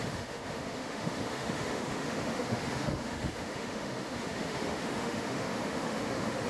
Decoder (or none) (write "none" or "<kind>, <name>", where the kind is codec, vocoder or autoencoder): autoencoder, DAC-VAE